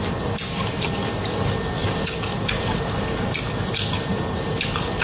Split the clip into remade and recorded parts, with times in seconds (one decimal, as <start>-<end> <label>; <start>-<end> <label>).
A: 0.0-1.8 recorded; 1.8-5.0 remade